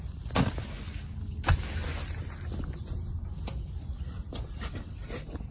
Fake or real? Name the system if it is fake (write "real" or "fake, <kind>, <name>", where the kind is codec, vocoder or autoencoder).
real